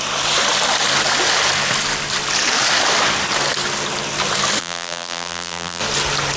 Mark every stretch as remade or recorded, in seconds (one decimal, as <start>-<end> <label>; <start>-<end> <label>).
0.0-4.6 recorded; 4.6-5.8 remade; 5.8-6.4 recorded